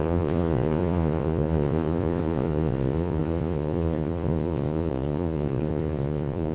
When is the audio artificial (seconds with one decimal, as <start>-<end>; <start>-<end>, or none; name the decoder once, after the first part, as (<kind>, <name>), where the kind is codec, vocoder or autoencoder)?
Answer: 0.0-6.5 (vocoder, Vocos)